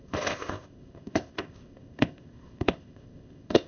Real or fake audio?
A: fake